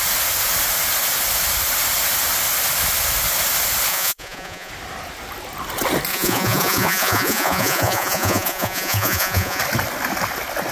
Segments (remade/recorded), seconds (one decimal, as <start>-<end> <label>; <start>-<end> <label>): 0.0-3.9 recorded; 3.9-4.7 remade; 4.7-6.1 recorded; 6.1-9.6 remade; 9.6-10.7 recorded